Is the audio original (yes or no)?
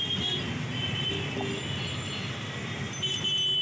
yes